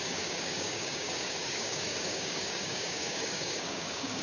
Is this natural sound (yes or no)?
no